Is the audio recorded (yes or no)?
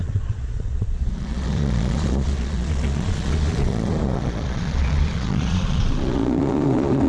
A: no